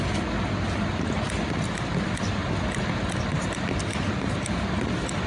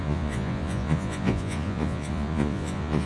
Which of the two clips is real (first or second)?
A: first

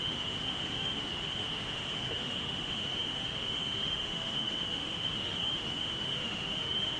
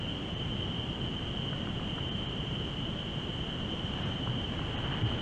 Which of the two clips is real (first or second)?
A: second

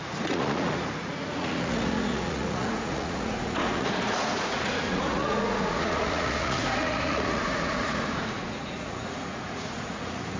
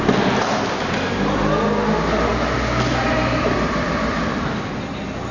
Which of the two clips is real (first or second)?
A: second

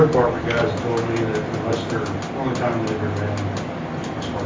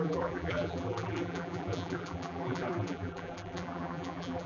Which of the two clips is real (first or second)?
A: first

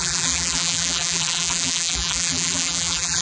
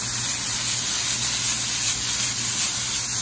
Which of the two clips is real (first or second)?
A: second